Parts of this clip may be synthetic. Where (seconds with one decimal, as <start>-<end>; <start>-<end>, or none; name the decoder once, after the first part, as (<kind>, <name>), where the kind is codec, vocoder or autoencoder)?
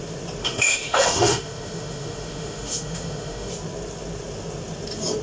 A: 0.4-3.5 (autoencoder, DAC-VAE)